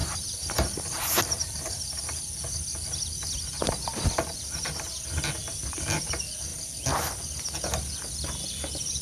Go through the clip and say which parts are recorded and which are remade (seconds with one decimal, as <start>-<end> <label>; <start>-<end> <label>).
0.0-2.2 remade; 2.2-9.0 recorded